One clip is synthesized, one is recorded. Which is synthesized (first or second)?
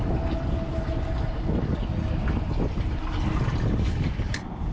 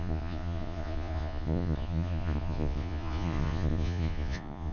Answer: second